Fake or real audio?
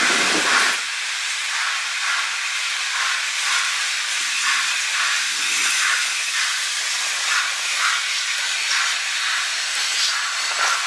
real